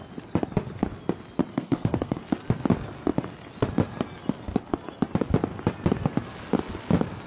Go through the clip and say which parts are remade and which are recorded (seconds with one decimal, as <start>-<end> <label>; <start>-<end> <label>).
0.0-1.5 recorded; 1.5-2.2 remade; 2.2-7.3 recorded